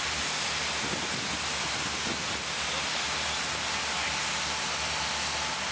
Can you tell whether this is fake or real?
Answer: real